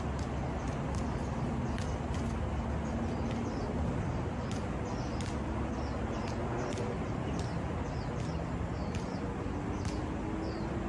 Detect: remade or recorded recorded